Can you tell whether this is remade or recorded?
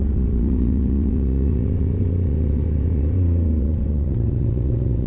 remade